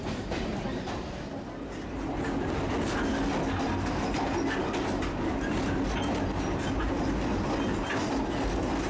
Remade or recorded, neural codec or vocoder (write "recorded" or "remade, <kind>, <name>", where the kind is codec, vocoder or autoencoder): recorded